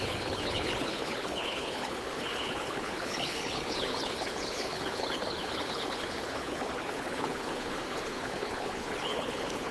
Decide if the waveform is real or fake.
fake